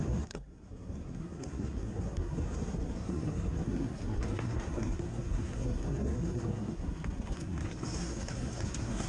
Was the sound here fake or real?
fake